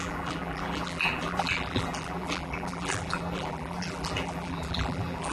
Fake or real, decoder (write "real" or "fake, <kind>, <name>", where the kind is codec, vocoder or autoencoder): fake, vocoder, BigVGAN v2